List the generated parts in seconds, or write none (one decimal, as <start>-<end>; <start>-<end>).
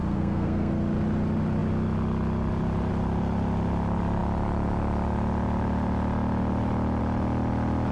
0.0-0.7